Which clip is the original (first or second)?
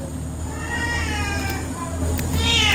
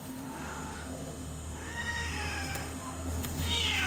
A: first